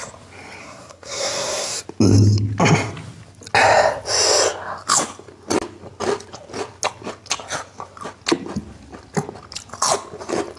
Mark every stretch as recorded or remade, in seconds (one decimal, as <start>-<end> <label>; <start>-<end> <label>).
0.0-0.6 recorded; 0.6-1.8 remade; 1.8-10.6 recorded